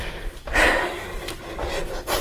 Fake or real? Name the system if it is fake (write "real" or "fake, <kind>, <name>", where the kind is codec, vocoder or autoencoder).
real